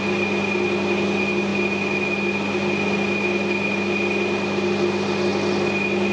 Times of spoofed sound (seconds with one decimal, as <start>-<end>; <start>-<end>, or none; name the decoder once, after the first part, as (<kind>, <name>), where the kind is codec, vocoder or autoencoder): none